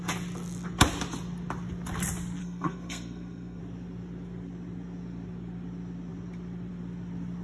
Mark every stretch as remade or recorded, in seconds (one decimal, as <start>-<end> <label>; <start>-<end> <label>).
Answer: 0.0-2.4 recorded; 2.4-3.6 remade; 3.6-7.4 recorded